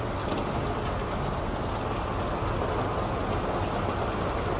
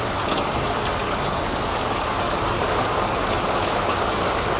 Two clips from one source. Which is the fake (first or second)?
second